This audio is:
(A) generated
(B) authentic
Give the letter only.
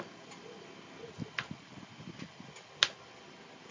B